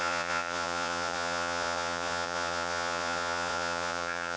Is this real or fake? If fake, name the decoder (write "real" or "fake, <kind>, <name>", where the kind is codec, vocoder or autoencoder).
fake, vocoder, Vocos